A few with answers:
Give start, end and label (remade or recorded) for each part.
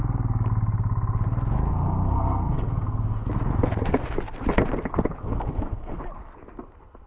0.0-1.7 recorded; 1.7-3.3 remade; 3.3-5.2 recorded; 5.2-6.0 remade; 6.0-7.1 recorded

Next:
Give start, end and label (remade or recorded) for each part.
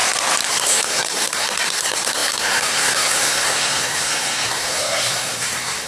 0.0-0.5 recorded; 0.5-5.9 remade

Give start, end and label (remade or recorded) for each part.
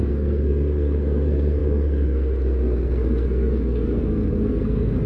0.0-5.1 remade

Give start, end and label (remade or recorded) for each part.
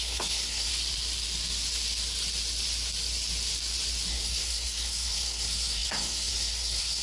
0.0-0.7 remade; 0.7-4.1 recorded; 4.1-7.0 remade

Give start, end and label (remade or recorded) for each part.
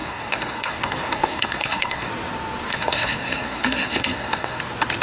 0.0-2.1 remade; 2.1-2.7 recorded; 2.7-4.6 remade; 4.6-5.0 recorded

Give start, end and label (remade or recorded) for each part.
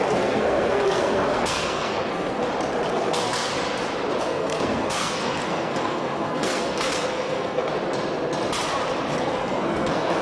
0.0-2.4 remade; 2.4-2.9 recorded; 2.9-3.5 remade; 3.5-4.2 recorded; 4.2-7.7 remade; 7.7-9.2 recorded; 9.2-10.2 remade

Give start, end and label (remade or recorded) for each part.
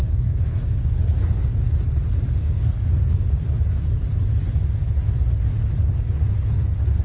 0.0-1.7 remade; 1.7-2.3 recorded; 2.3-3.4 remade; 3.4-7.0 recorded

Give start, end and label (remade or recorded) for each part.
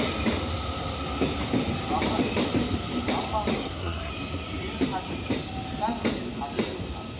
0.0-3.5 recorded; 3.5-4.1 remade; 4.1-7.2 recorded